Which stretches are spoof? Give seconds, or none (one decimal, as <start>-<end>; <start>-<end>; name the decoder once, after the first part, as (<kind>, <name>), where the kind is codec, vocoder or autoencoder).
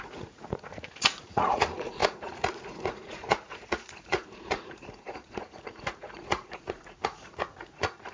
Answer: 0.0-8.1 (vocoder, Vocos)